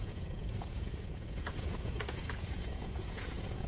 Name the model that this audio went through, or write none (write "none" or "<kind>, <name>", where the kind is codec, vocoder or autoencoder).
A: vocoder, Vocos